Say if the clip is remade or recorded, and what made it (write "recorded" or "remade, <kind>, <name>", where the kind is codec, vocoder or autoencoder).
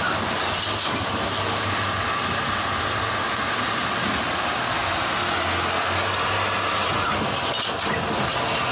recorded